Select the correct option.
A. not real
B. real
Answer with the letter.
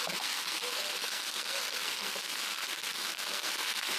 A